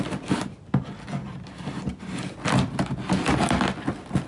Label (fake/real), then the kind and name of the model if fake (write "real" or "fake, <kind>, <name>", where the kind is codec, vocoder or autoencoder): real